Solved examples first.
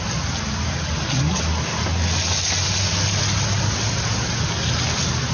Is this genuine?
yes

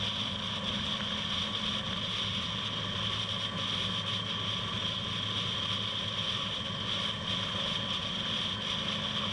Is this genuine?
yes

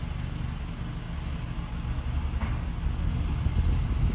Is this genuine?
yes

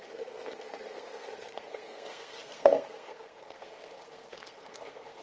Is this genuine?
no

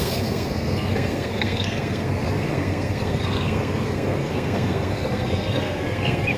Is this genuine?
no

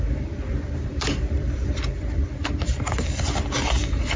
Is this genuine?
no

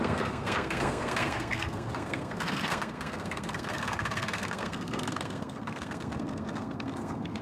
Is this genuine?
no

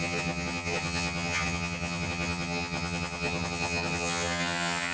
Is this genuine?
no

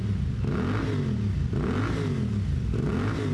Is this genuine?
yes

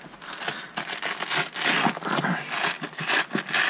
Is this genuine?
yes